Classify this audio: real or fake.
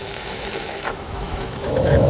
fake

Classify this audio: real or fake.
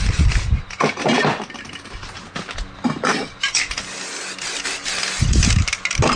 real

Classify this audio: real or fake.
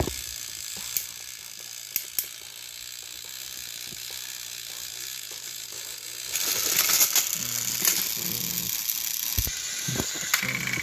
real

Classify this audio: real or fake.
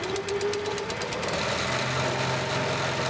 real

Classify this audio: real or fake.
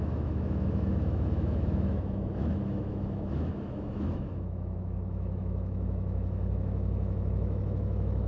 fake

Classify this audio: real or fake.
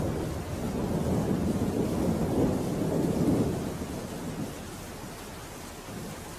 real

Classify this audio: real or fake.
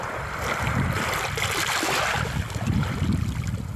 real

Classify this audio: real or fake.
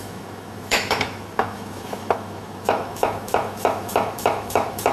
fake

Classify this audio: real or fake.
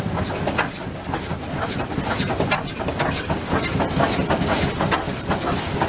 real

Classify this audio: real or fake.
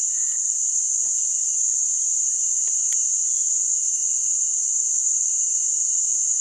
real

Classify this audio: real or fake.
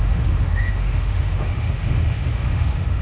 fake